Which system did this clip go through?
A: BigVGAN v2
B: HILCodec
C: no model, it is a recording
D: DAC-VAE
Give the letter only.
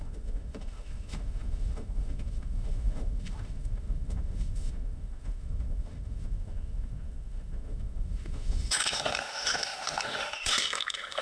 D